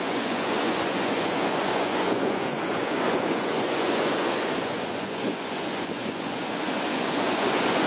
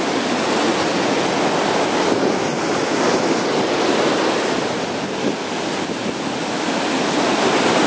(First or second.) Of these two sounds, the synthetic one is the first